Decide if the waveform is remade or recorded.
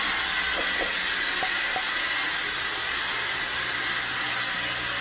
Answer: recorded